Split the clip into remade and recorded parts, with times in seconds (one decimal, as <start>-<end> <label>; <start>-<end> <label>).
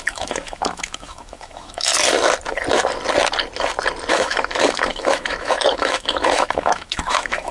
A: 0.0-1.9 remade; 1.9-4.1 recorded; 4.1-7.5 remade